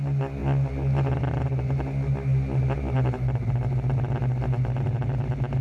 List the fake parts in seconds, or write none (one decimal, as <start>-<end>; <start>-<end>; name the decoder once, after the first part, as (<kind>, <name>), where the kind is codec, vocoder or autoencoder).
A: none